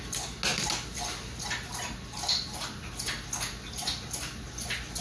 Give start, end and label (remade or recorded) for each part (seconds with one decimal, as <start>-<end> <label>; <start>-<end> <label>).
0.0-5.0 recorded